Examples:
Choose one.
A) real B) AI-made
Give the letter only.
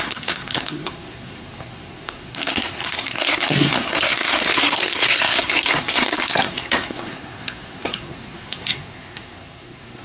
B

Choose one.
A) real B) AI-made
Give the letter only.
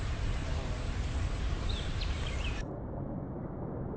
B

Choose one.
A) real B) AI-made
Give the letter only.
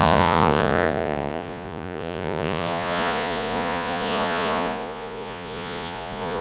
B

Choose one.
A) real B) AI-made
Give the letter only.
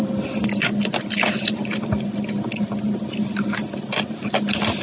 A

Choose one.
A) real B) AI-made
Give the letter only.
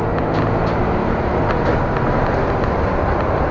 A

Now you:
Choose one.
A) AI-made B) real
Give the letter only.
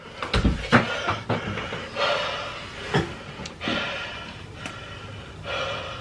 B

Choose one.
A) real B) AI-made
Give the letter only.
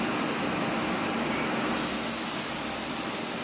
A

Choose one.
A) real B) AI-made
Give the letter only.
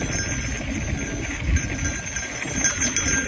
A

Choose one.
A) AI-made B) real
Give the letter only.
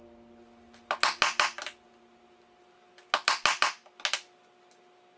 B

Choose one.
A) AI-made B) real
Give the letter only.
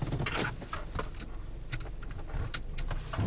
B